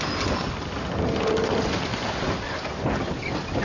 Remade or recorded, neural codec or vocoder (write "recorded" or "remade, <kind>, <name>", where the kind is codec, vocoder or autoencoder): recorded